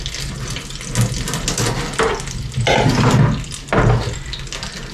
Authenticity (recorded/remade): recorded